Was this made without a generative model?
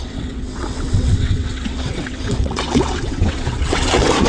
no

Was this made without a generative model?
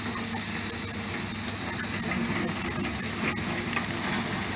yes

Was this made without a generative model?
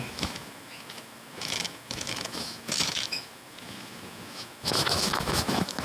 no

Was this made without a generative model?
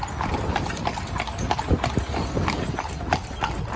yes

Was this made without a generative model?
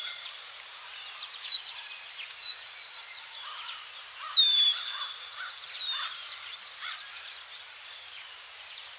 no